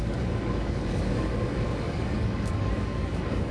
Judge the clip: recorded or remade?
remade